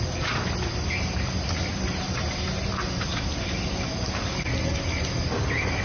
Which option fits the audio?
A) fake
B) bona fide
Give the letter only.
B